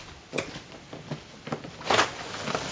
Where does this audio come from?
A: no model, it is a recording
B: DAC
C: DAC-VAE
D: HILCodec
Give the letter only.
A